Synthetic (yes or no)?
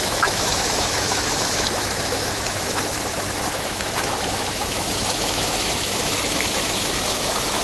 yes